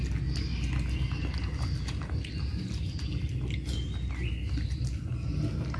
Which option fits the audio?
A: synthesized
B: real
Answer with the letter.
B